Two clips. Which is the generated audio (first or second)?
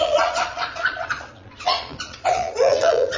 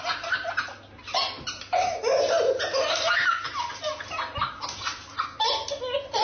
first